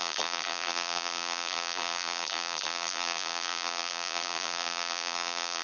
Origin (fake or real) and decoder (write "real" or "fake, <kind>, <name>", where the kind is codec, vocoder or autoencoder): fake, vocoder, BigVGAN v2